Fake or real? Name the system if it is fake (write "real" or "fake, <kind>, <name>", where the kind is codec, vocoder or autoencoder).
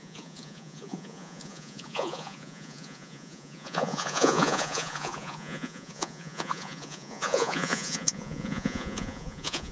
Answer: fake, vocoder, Vocos